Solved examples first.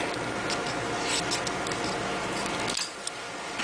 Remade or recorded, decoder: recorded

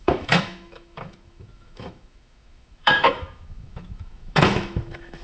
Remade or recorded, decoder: remade, autoencoder, DAC-VAE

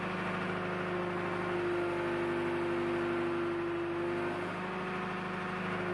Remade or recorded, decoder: recorded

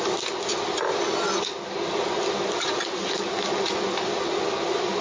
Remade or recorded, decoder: recorded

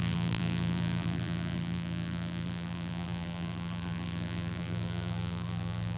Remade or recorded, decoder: remade, vocoder, BigVGAN v2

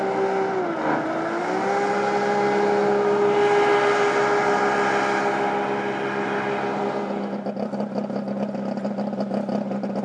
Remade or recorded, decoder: recorded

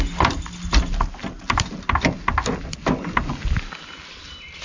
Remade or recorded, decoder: recorded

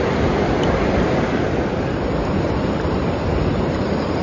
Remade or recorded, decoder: recorded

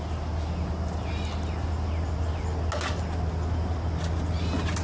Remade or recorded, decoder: recorded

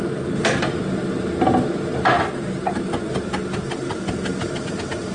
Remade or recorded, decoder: recorded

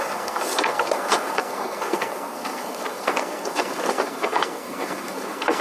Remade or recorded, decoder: remade, codec, SNAC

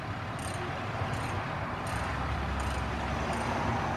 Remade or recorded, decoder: recorded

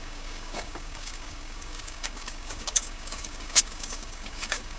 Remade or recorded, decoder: remade, codec, DAC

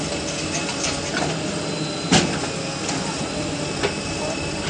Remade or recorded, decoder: recorded